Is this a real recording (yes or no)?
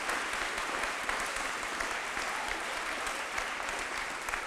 no